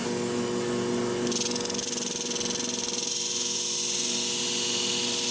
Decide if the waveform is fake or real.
real